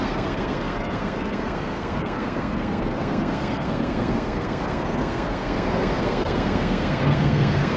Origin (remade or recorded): remade